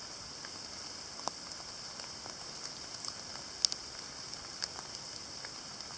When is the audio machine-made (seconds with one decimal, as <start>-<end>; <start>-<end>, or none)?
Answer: none